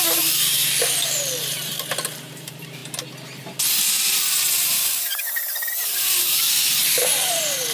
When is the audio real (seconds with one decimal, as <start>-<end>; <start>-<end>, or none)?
0.6-1.4; 2.8-4.5